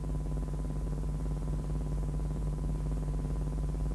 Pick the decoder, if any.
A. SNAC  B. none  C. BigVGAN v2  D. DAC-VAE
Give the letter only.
B